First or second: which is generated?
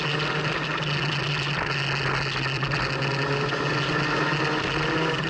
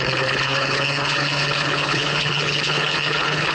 second